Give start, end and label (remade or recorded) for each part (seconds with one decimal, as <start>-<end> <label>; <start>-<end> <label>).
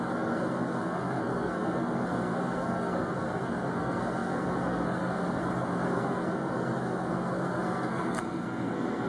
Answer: 0.0-9.1 remade